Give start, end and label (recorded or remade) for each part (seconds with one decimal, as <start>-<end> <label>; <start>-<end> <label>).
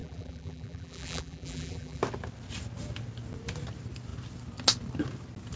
0.0-2.0 remade; 2.0-5.6 recorded